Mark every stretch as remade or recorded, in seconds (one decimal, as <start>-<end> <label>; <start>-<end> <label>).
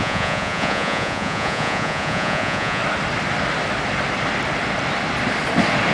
0.0-2.8 remade; 2.8-5.9 recorded